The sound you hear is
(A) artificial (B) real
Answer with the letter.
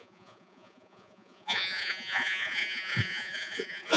A